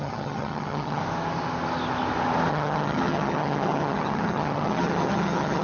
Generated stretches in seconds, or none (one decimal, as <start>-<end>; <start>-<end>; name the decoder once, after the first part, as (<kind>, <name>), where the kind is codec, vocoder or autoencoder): 0.0-1.0 (vocoder, HiFi-GAN); 2.5-5.6